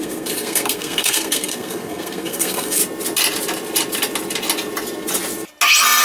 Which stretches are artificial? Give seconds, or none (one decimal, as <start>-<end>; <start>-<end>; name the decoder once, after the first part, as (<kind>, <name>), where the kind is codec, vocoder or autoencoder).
0.0-2.8 (codec, SNAC)